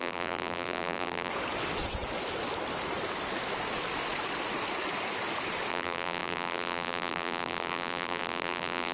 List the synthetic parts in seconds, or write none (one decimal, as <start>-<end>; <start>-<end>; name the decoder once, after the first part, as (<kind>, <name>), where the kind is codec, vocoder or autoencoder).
0.0-1.3 (vocoder, BigVGAN v2); 5.7-8.9